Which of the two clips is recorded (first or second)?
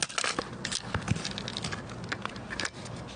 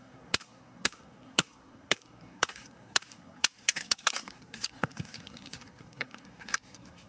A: first